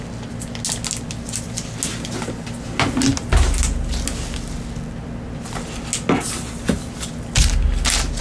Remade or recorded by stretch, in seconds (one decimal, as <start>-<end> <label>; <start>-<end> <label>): 0.0-8.2 recorded